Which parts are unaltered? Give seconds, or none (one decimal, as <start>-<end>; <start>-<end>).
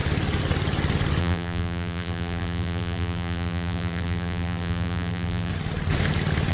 0.0-1.2; 5.5-6.5